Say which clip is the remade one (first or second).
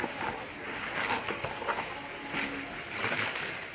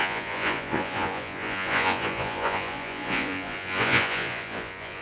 second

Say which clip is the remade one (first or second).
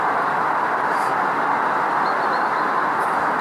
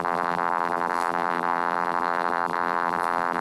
second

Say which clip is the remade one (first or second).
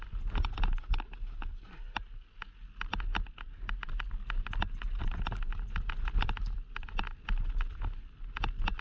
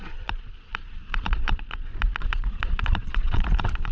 second